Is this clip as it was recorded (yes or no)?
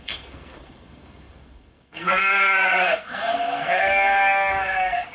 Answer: no